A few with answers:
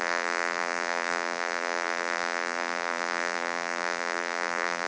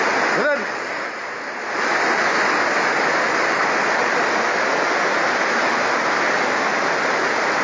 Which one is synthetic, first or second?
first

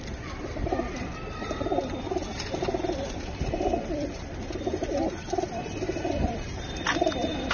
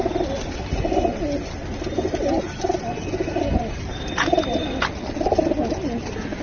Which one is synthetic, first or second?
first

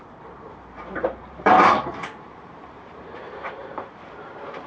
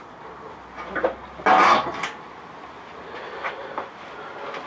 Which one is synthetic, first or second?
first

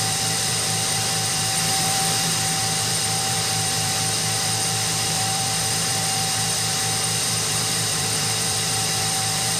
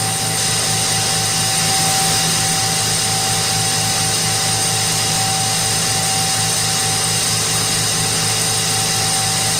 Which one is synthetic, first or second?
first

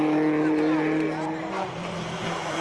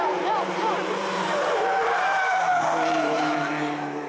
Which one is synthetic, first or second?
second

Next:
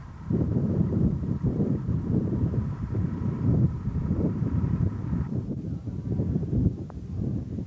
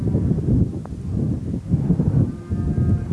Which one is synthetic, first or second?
first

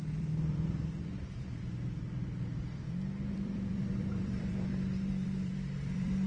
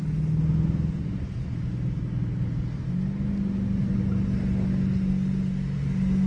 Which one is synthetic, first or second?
first